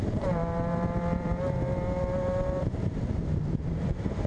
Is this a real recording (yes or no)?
no